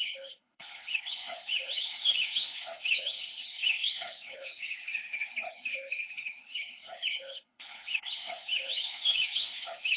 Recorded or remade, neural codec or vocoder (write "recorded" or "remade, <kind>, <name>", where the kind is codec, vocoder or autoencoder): remade, codec, HILCodec